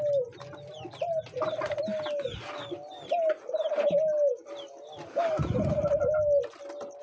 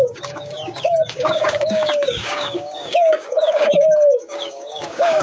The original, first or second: first